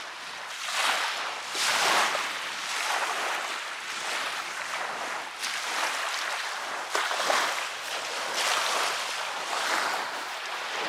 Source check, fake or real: real